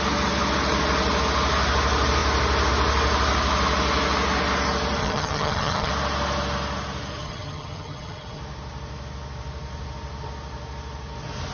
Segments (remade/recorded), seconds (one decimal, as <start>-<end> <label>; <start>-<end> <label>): 0.0-5.0 recorded; 5.0-5.9 remade; 5.9-7.2 recorded; 7.2-8.4 remade; 8.4-11.5 recorded